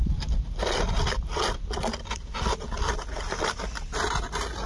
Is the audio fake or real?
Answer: real